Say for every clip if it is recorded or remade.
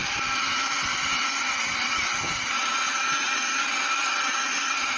recorded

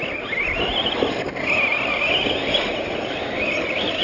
recorded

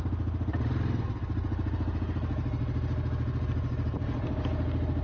recorded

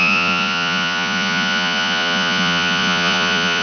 remade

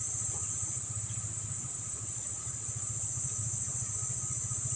recorded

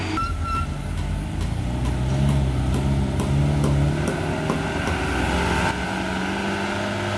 recorded